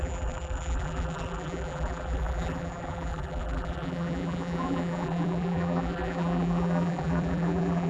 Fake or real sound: fake